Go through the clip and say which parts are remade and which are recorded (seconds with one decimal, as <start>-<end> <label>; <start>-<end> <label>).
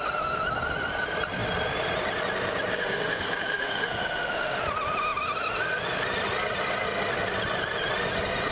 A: 0.0-2.7 recorded; 2.7-4.6 remade; 4.6-8.5 recorded